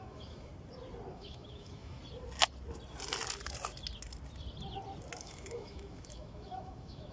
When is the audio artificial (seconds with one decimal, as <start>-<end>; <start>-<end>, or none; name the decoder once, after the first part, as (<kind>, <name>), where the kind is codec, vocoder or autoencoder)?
0.0-0.5 (autoencoder, DAC-VAE); 1.1-2.0; 5.2-7.1